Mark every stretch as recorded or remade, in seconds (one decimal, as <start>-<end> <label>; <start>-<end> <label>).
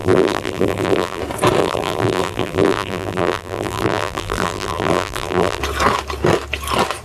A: 0.0-1.2 remade; 1.2-1.6 recorded; 1.6-5.6 remade; 5.6-7.0 recorded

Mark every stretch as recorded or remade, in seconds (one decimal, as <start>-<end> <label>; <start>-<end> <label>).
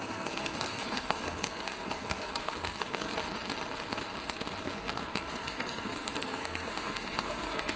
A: 0.0-3.1 remade; 3.1-4.6 recorded; 4.6-7.8 remade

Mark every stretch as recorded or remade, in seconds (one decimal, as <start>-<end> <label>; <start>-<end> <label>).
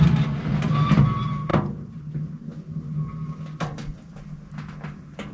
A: 0.0-5.3 recorded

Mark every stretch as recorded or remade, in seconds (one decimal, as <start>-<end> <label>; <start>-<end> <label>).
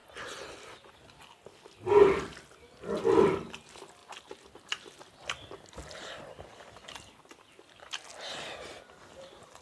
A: 0.0-9.6 recorded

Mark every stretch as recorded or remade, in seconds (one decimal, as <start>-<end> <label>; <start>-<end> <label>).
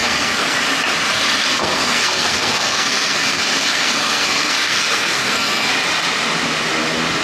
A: 0.0-0.6 remade; 0.6-1.4 recorded; 1.4-5.7 remade; 5.7-7.2 recorded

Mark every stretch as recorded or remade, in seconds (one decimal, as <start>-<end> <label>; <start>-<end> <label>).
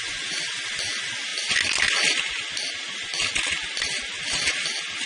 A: 0.0-5.1 recorded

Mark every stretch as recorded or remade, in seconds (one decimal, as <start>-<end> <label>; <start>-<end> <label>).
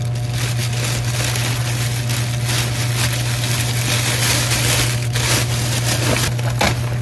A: 0.0-7.0 recorded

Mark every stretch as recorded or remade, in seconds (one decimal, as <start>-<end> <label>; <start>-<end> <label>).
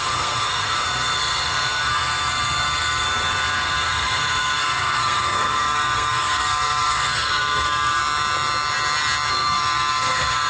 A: 0.0-8.0 remade; 8.0-9.3 recorded; 9.3-10.5 remade